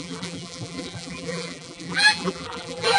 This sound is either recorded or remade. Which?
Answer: remade